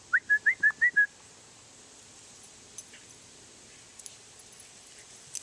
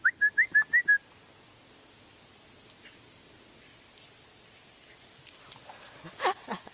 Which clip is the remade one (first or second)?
first